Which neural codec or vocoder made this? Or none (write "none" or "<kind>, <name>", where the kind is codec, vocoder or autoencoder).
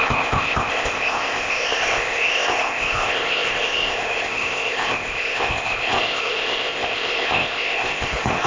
codec, ZipCodec